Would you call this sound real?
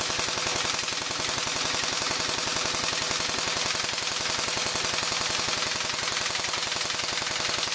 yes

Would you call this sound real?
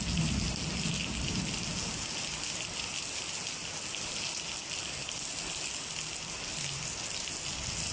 yes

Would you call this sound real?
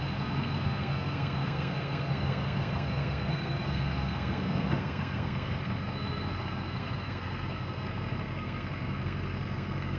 no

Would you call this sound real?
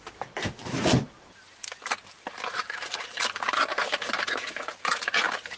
no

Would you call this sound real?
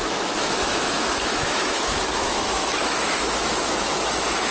no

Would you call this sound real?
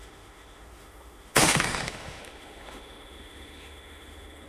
no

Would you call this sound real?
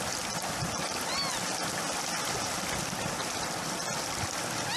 yes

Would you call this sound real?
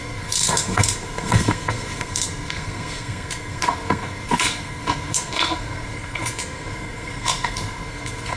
no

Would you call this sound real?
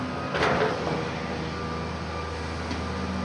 yes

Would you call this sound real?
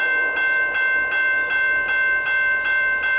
yes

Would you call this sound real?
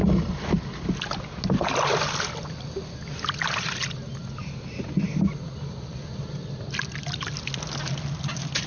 yes